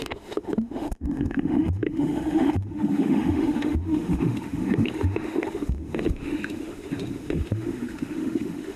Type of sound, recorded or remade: remade